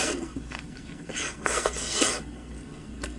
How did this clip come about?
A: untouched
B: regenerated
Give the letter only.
B